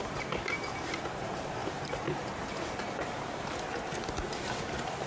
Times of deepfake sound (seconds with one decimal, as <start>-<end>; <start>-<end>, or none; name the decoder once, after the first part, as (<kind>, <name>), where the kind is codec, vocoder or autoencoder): 1.6-2.7 (vocoder, BigVGAN v2)